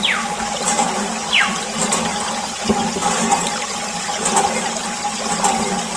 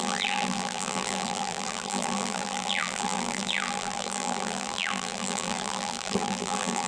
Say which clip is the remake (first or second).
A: second